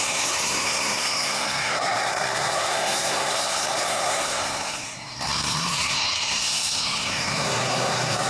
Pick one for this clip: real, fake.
fake